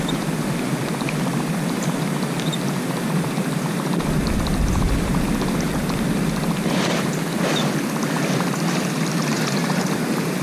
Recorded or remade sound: remade